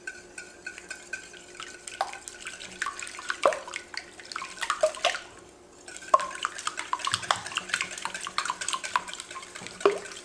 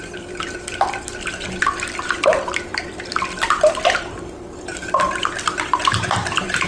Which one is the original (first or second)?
first